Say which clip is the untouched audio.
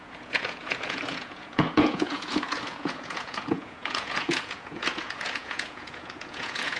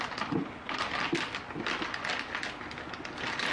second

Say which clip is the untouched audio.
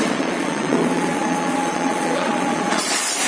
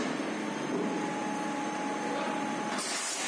second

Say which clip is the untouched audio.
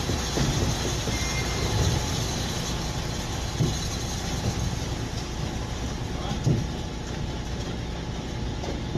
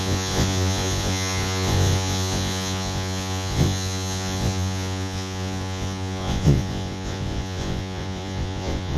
first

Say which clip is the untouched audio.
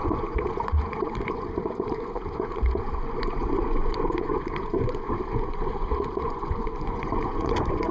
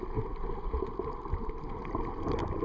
second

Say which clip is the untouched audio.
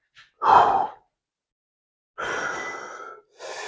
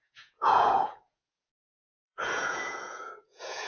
first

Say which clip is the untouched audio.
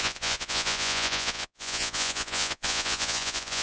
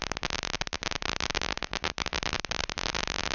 second